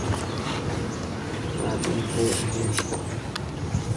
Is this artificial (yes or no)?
no